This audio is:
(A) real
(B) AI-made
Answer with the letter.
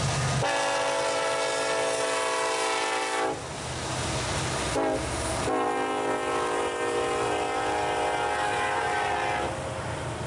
A